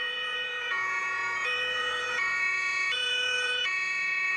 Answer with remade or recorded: remade